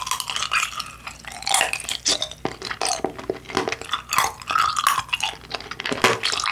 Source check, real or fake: real